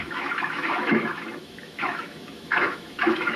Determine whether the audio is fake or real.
fake